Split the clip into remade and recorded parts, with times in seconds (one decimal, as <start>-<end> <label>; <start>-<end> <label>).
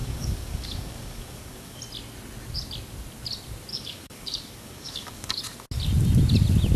0.0-1.8 remade; 1.8-3.7 recorded; 3.7-5.4 remade; 5.4-6.8 recorded